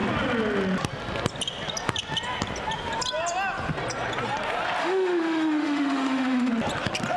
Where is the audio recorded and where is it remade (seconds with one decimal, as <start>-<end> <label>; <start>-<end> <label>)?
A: 0.0-4.8 recorded; 4.8-6.5 remade; 6.5-7.2 recorded